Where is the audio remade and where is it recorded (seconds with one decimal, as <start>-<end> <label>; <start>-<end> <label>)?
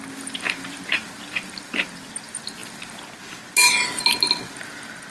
0.0-5.1 recorded